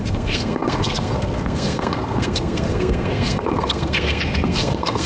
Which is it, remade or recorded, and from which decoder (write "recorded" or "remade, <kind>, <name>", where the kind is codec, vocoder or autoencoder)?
remade, codec, SNAC